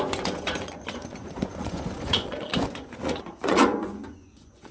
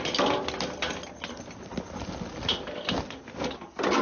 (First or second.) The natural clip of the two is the second